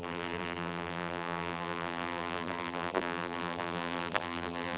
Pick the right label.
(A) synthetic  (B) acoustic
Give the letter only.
A